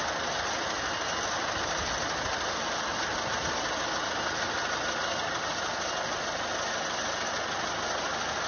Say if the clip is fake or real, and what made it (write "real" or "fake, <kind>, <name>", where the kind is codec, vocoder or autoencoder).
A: real